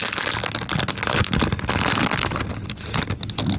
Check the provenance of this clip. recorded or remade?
recorded